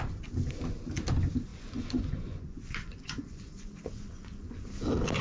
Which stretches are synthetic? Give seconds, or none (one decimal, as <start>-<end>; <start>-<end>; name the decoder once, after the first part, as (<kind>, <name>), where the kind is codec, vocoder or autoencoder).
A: 1.5-4.6 (vocoder, Vocos)